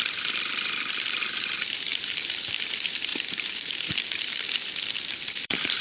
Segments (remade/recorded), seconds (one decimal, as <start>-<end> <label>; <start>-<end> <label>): 0.0-5.8 remade